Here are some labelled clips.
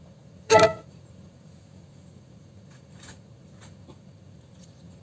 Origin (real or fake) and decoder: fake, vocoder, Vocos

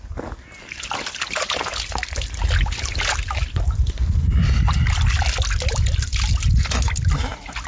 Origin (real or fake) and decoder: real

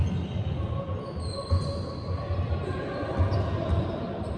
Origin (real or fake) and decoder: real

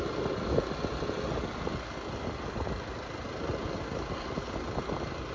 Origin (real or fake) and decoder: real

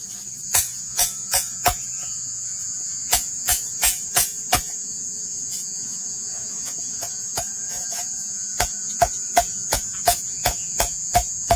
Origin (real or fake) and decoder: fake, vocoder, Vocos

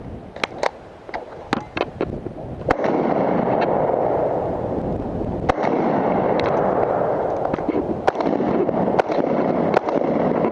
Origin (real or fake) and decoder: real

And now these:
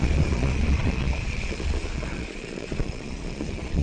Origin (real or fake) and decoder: fake, vocoder, Vocos